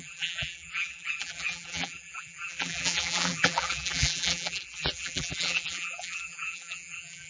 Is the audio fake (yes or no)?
yes